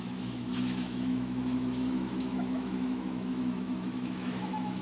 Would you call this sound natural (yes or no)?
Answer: no